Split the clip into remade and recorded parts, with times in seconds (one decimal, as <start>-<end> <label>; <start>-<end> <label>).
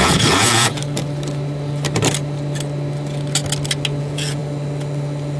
0.0-0.8 remade; 0.8-4.0 recorded; 4.0-4.4 remade; 4.4-5.4 recorded